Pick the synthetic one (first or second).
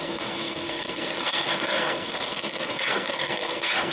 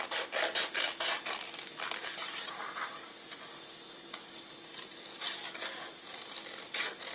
first